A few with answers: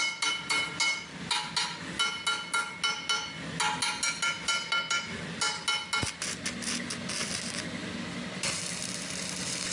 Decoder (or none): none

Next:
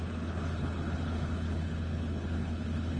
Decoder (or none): codec, HILCodec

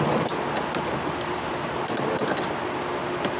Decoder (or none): none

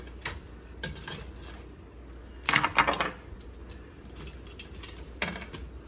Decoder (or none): none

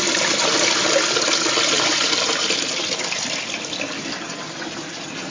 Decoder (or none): none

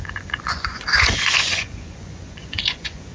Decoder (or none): vocoder, Vocos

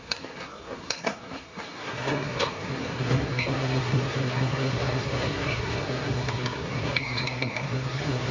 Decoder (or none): codec, SNAC